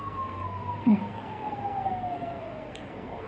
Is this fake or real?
fake